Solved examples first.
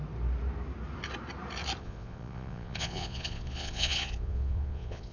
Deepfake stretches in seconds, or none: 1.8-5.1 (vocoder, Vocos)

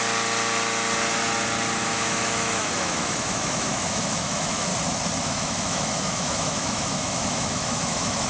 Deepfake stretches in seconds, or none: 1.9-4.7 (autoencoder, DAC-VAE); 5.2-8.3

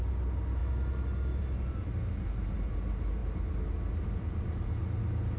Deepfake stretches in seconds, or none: none